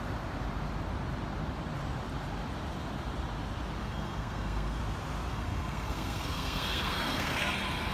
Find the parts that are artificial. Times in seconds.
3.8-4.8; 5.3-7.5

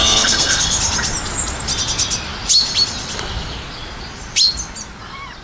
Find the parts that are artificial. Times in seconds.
0.0-0.8